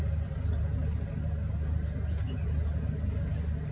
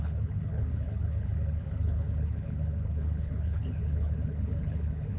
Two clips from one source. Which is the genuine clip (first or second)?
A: first